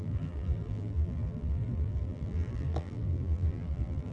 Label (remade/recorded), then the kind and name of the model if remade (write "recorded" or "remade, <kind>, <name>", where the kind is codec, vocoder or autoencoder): remade, vocoder, BigVGAN v2